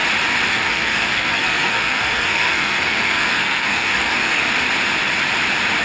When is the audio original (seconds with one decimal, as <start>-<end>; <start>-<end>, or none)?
0.0-0.5; 4.4-5.8